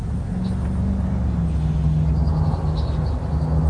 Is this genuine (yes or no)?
yes